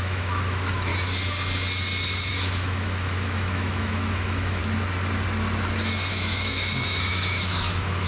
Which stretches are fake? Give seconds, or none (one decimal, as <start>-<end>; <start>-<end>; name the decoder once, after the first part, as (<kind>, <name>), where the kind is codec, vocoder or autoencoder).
0.0-0.9 (autoencoder, DAC-VAE); 2.3-4.6; 6.1-8.1